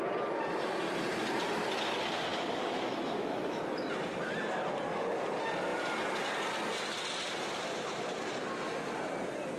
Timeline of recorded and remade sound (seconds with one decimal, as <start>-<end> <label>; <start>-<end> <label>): 0.0-2.3 recorded; 2.3-3.6 remade; 3.6-9.6 recorded